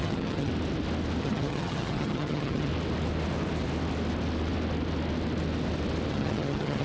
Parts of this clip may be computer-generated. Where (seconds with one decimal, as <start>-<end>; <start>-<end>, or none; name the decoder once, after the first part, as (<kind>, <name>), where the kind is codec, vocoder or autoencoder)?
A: 0.0-0.5 (vocoder, HiFi-GAN); 1.2-2.7; 6.1-6.8